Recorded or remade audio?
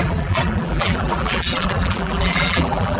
remade